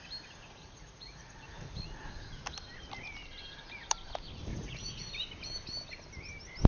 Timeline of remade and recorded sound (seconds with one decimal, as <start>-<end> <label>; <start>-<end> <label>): 0.0-0.6 recorded; 0.6-2.4 remade; 2.4-4.5 recorded; 4.5-5.1 remade; 5.1-6.7 recorded